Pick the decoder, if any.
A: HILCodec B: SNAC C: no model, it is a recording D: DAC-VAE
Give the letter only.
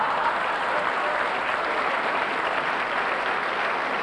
C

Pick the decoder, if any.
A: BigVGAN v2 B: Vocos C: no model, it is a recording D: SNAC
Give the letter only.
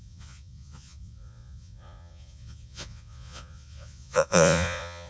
B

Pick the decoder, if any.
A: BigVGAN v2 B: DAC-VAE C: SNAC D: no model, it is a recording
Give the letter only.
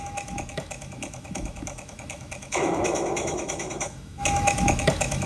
B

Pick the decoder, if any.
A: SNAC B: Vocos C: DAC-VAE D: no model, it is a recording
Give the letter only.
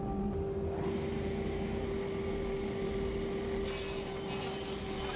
D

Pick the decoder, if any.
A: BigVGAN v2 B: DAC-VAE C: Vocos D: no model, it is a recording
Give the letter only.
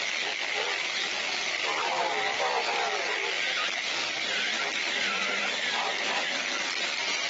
D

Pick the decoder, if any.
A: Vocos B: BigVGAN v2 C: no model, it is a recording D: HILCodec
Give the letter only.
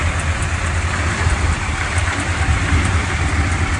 C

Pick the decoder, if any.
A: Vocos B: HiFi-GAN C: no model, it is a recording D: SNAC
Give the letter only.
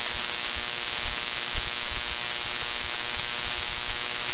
C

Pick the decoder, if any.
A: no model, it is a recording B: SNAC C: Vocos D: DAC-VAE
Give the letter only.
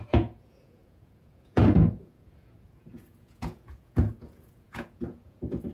C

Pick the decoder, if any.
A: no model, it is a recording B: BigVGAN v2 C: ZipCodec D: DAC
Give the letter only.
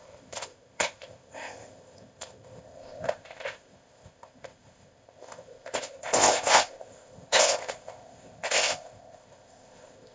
C